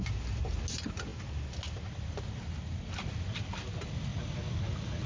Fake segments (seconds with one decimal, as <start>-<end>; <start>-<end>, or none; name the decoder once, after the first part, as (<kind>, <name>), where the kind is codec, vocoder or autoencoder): 4.1-5.1 (vocoder, BigVGAN v2)